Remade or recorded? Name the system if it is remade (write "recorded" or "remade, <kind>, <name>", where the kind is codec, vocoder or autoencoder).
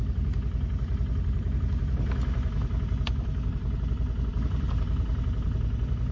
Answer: recorded